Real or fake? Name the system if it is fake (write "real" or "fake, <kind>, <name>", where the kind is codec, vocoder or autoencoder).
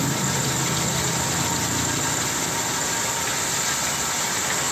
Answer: real